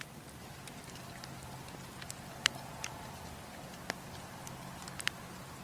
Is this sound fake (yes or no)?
no